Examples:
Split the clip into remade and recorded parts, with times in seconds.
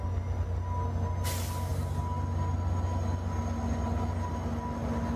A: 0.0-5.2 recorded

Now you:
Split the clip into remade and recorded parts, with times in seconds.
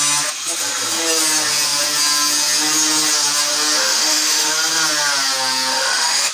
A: 0.0-3.8 recorded; 3.8-4.5 remade; 4.5-5.7 recorded; 5.7-6.3 remade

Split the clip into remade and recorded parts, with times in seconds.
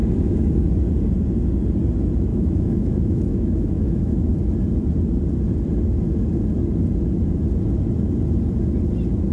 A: 0.0-0.5 remade; 0.5-2.3 recorded; 2.3-4.3 remade; 4.3-9.3 recorded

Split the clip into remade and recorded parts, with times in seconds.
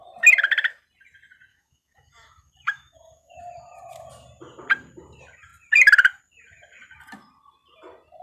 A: 0.0-1.5 recorded; 1.5-3.4 remade; 3.4-8.2 recorded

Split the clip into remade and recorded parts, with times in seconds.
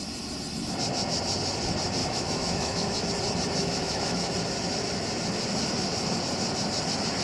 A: 0.0-2.0 recorded; 2.0-3.1 remade; 3.1-3.6 recorded; 3.6-4.3 remade; 4.3-7.2 recorded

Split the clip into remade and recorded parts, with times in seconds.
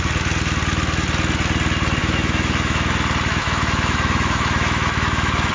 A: 0.0-2.0 recorded; 2.0-2.9 remade; 2.9-3.3 recorded; 3.3-5.5 remade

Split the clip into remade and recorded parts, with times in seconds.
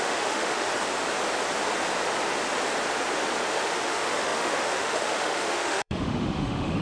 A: 0.0-0.7 remade; 0.7-3.5 recorded; 3.5-6.8 remade